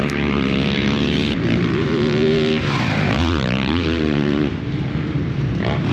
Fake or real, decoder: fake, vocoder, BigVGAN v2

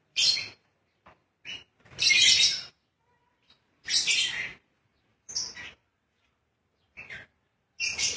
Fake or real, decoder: fake, vocoder, BigVGAN v2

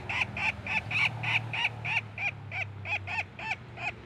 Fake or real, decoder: real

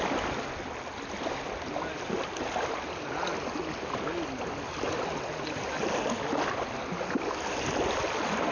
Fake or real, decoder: real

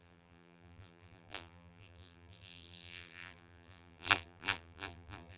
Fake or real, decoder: fake, vocoder, BigVGAN v2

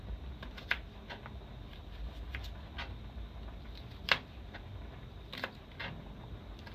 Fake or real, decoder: real